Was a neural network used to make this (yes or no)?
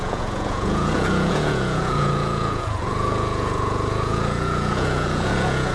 yes